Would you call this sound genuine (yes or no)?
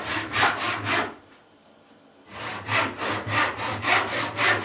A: yes